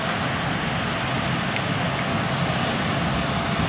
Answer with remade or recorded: recorded